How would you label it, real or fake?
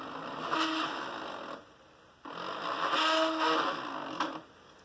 real